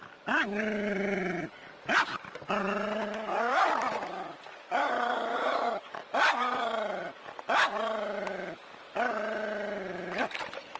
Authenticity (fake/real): fake